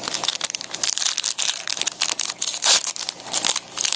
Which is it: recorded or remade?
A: recorded